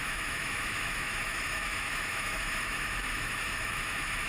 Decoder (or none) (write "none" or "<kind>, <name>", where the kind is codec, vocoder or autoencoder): autoencoder, DAC-VAE